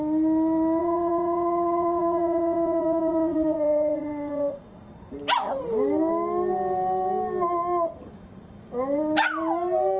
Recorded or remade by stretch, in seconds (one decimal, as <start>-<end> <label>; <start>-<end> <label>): 0.0-0.8 recorded; 0.8-4.9 remade; 4.9-10.0 recorded